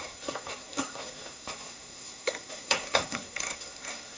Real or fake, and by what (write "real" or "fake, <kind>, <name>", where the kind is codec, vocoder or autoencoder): fake, codec, SNAC